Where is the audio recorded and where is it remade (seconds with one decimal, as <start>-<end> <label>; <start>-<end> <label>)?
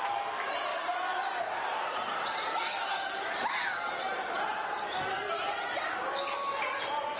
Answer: 0.0-0.7 recorded; 0.7-4.0 remade; 4.0-7.2 recorded